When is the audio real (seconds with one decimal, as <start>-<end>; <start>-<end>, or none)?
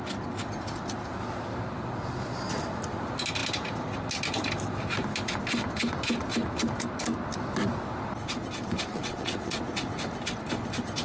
0.0-8.9; 9.6-11.0